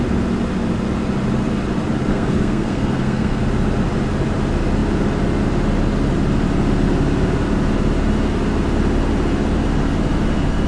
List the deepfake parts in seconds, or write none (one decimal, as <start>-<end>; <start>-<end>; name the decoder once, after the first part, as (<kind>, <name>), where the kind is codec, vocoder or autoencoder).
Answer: 2.1-3.4 (codec, SNAC)